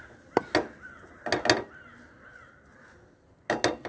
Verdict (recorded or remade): recorded